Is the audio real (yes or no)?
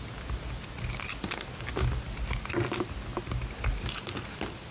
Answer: yes